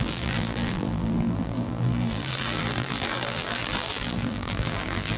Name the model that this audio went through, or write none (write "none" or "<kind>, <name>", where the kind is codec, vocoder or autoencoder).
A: vocoder, BigVGAN v2